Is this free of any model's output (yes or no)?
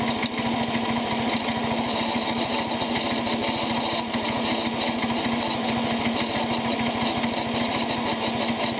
yes